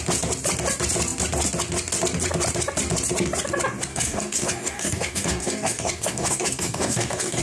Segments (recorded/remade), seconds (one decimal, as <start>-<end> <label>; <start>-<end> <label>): 0.0-3.9 recorded; 3.9-7.4 remade